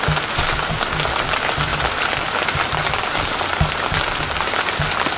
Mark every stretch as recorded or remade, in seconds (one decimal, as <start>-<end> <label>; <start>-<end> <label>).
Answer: 0.0-5.2 recorded